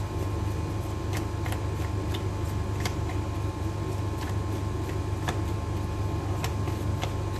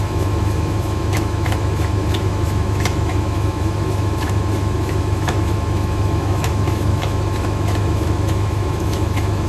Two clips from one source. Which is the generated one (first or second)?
second